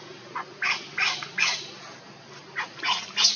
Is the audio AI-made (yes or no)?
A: no